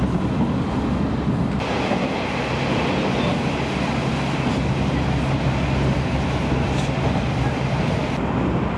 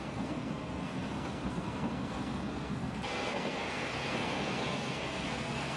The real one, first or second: first